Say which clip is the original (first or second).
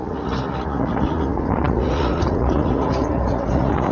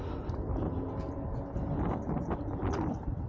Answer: second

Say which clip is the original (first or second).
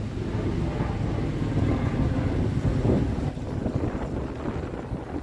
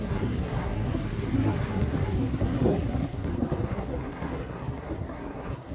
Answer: first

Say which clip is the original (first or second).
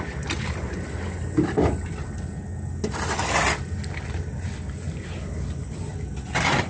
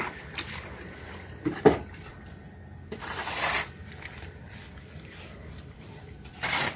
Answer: first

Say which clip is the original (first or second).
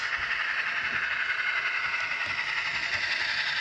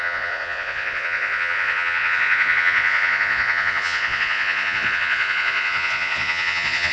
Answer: first